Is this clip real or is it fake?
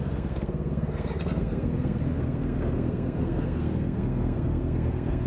fake